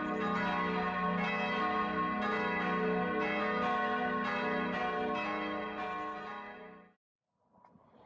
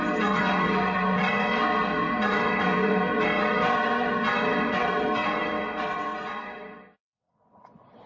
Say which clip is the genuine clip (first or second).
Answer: first